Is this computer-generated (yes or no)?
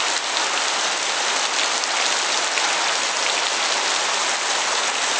no